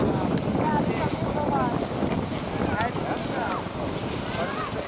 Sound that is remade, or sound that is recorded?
recorded